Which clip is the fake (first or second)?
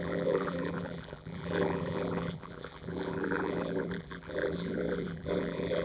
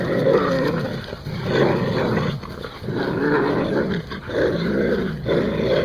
first